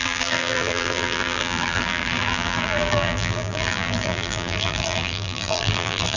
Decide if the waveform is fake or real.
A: fake